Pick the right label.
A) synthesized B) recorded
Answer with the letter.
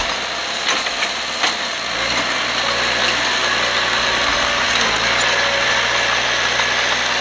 B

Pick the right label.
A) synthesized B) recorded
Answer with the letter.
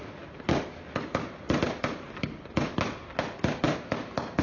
B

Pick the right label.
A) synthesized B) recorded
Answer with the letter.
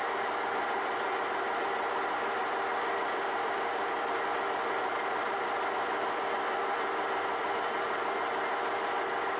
B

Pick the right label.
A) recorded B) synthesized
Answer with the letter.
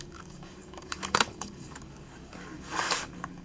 B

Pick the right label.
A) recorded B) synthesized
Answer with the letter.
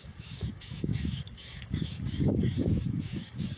B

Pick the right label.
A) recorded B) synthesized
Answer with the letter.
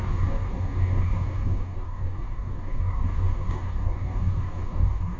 B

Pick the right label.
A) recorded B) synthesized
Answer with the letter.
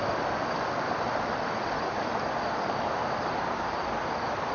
A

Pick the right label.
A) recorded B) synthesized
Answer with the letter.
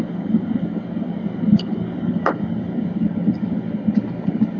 B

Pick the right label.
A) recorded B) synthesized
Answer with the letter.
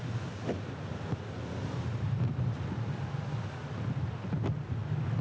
A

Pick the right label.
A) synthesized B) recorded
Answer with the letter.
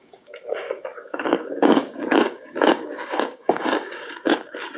A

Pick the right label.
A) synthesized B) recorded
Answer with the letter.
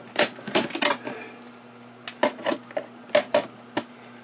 B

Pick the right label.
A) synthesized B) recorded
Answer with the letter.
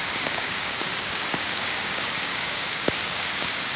A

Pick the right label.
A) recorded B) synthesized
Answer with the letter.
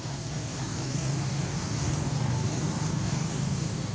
B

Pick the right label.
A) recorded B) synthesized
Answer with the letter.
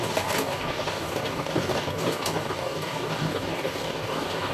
B